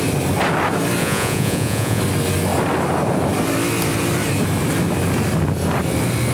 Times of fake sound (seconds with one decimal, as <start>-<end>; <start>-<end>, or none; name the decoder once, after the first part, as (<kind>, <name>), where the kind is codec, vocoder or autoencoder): 1.0-2.0 (vocoder, Vocos)